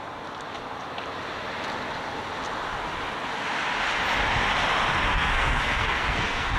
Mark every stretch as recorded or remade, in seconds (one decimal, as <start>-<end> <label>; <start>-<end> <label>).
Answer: 0.0-5.1 recorded; 5.1-6.6 remade